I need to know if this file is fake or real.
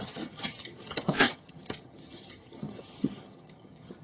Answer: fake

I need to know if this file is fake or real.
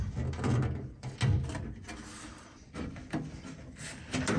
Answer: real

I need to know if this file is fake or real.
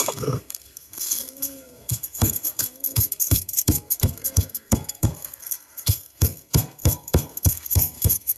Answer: fake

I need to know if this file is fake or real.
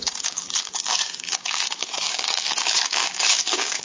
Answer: fake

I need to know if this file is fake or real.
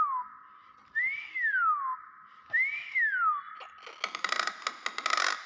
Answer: real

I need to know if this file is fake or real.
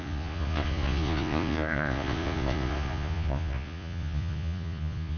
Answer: fake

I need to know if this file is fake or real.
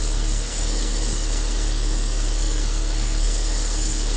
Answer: fake